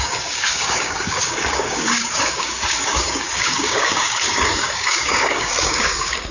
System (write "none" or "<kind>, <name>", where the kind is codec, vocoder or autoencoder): codec, DAC